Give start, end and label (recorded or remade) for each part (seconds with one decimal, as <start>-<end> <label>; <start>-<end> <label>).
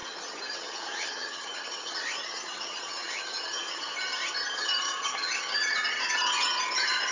0.0-7.1 remade